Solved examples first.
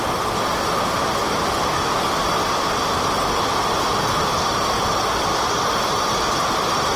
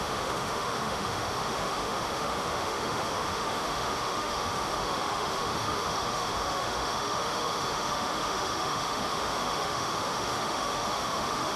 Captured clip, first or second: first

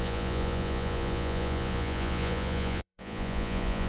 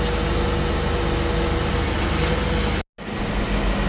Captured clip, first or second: second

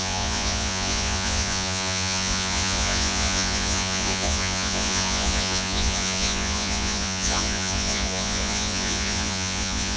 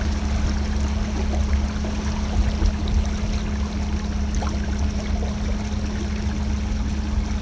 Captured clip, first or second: second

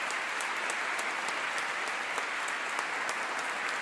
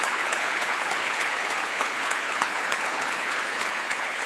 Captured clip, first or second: first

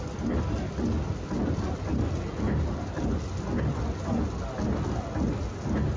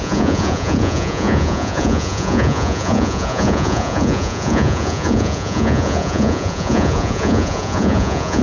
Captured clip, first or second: first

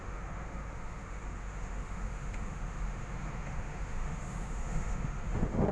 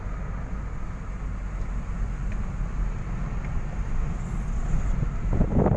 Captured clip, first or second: second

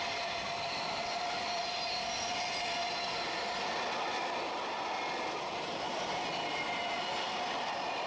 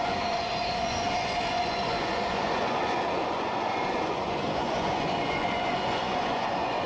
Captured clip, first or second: first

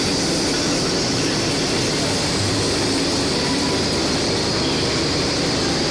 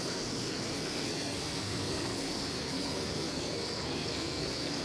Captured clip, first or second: first